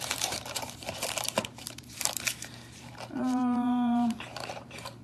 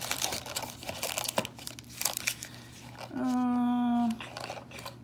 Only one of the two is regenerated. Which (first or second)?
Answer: first